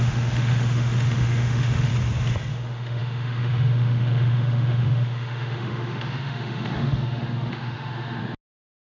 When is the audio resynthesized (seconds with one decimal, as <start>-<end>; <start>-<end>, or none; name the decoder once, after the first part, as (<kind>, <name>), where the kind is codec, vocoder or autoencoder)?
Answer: 0.0-1.9 (autoencoder, DAC-VAE); 2.5-8.2